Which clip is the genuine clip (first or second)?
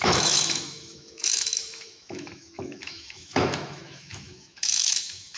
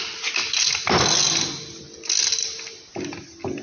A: second